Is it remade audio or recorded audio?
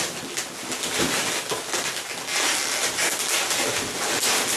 recorded